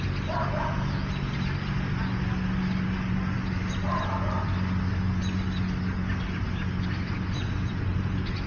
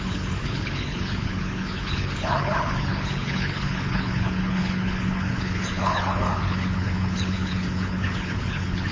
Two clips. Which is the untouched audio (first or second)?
first